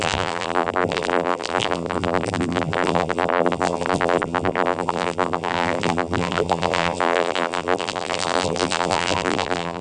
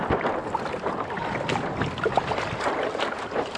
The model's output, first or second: first